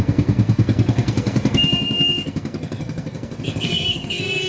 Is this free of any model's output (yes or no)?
no